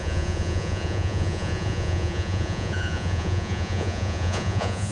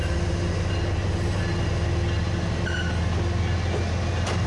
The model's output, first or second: first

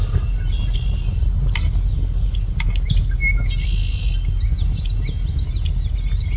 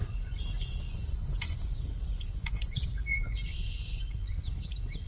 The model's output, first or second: second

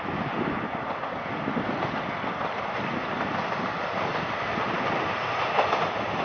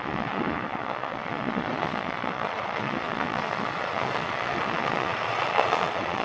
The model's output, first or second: second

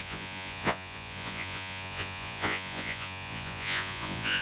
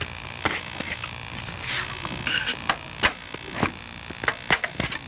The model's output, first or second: first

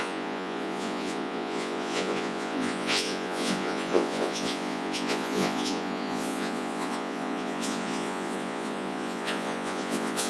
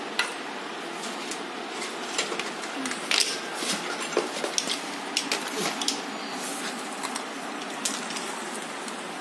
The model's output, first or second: first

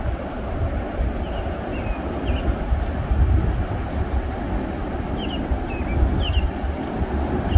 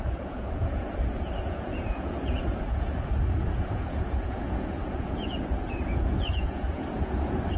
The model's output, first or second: second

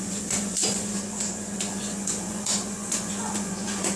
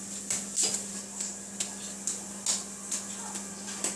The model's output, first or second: first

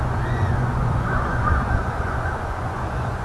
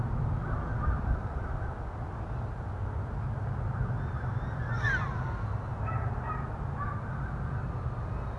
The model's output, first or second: first